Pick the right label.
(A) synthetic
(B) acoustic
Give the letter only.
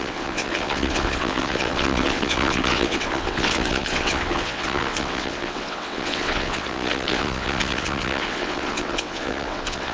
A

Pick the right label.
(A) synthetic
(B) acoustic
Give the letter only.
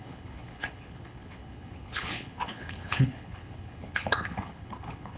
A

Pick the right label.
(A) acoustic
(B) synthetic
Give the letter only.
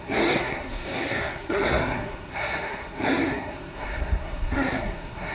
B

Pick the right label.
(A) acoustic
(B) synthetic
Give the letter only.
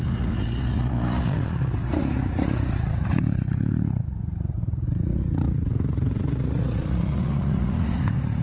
B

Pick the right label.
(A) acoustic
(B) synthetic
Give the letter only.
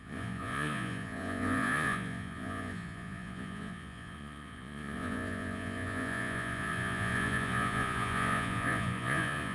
B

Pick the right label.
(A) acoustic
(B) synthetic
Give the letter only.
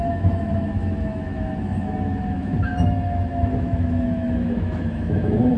B